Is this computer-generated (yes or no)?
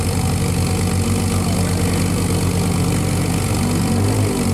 no